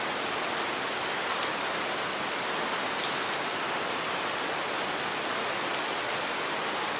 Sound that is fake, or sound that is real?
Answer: real